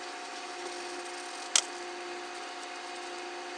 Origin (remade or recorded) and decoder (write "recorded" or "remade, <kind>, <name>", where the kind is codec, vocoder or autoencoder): recorded